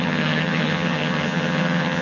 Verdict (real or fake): fake